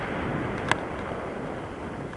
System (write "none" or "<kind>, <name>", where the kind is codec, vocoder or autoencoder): none